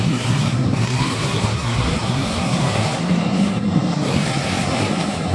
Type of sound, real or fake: fake